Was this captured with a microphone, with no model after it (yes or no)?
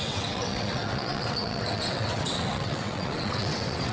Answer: no